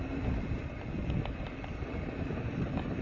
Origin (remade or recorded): recorded